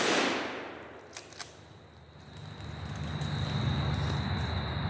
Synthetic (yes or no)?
no